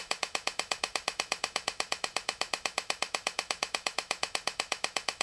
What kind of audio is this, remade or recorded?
remade